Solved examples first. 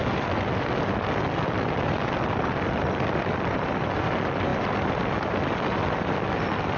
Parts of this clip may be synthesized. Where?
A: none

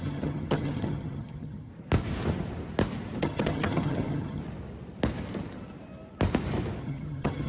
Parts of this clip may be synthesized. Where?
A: 0.0-1.7 (vocoder, HiFi-GAN); 3.2-4.4; 6.8-7.5